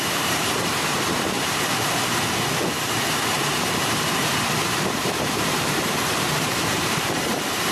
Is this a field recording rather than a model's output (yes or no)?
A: no